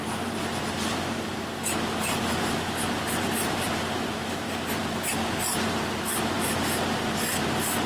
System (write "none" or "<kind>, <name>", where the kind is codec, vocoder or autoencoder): vocoder, BigVGAN v2